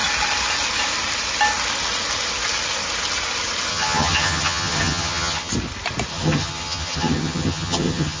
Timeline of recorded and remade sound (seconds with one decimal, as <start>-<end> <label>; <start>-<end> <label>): 0.0-3.7 recorded; 3.7-5.5 remade; 5.5-6.1 recorded; 6.1-8.2 remade